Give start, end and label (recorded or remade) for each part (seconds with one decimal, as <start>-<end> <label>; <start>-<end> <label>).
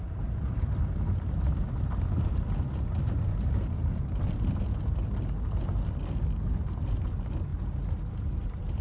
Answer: 0.0-8.8 recorded